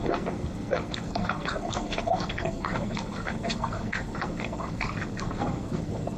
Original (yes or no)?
no